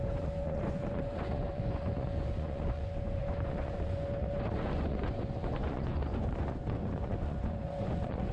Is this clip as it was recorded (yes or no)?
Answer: no